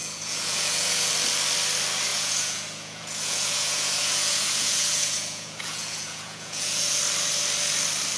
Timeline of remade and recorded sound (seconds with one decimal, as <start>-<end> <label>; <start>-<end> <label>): 0.0-1.1 remade; 1.1-2.1 recorded; 2.1-7.0 remade; 7.0-8.2 recorded